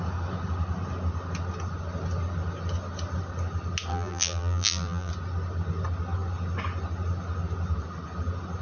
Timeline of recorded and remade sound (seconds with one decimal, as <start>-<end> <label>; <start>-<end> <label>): 0.0-3.9 recorded; 3.9-5.1 remade; 5.1-8.6 recorded